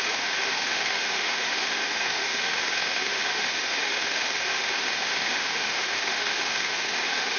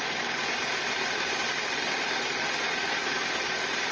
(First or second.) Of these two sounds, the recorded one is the second